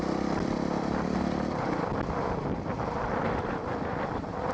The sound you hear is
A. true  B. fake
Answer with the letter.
A